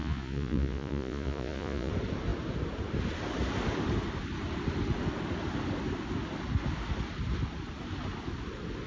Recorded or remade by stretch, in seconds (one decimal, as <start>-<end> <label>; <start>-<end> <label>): 0.0-1.9 remade; 1.9-8.9 recorded

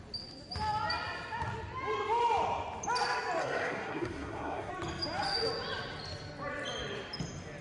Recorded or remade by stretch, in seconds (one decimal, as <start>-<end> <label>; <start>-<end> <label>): 0.0-3.4 recorded; 3.4-4.7 remade; 4.7-7.6 recorded